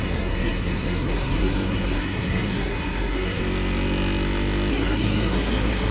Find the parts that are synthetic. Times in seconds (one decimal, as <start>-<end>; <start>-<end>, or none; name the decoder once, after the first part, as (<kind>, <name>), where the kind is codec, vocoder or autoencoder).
0.0-3.4 (codec, SNAC); 4.7-5.9